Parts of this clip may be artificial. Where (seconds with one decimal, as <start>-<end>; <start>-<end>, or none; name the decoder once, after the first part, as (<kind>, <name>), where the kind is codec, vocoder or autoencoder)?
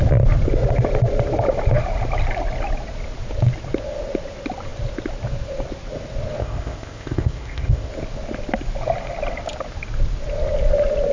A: 6.4-7.9 (codec, ZipCodec)